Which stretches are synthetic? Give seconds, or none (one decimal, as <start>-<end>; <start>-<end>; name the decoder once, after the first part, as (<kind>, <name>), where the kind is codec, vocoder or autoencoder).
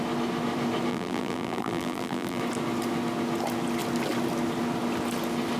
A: 0.9-2.4 (vocoder, BigVGAN v2)